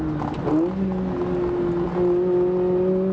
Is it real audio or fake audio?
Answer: real